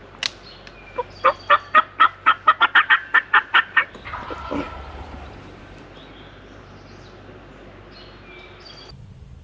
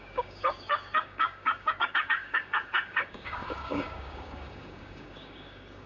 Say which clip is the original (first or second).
first